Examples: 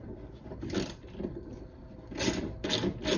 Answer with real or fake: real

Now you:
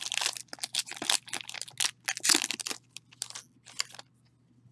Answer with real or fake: real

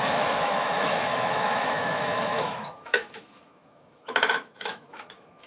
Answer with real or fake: fake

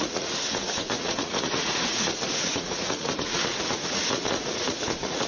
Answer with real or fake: fake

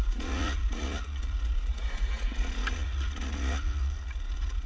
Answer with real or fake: fake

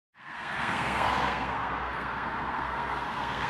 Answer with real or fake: fake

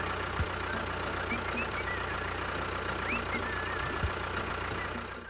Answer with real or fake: real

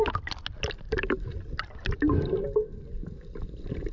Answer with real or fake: real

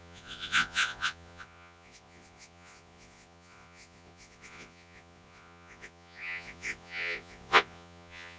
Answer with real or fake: fake